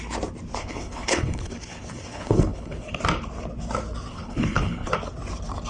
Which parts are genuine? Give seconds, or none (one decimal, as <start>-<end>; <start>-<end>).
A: 0.0-0.6; 3.0-4.1; 4.9-5.7